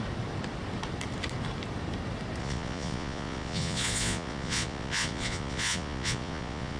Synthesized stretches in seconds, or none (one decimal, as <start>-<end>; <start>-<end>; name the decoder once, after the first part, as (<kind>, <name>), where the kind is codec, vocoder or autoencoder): 2.4-6.8 (vocoder, Vocos)